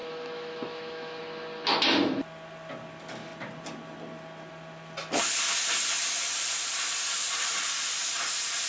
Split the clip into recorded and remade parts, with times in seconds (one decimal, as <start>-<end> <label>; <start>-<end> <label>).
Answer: 0.0-1.2 remade; 1.2-8.7 recorded